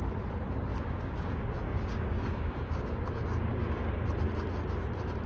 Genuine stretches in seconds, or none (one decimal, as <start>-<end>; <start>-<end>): 0.0-0.7; 3.9-5.3